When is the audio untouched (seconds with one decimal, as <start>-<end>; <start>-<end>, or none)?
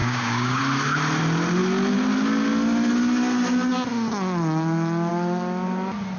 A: 0.6-6.2